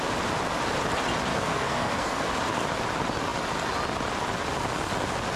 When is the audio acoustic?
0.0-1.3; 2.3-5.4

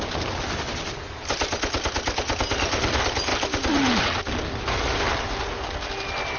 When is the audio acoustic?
0.0-3.3; 4.0-6.4

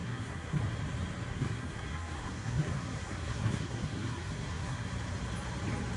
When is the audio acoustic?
0.6-1.3; 4.9-6.0